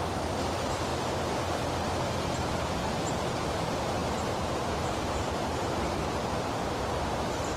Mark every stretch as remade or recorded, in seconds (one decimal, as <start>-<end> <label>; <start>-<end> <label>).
0.0-7.6 recorded